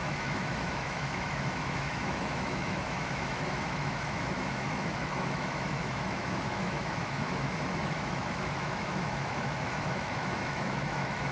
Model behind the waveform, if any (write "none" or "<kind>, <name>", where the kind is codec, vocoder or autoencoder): autoencoder, DAC-VAE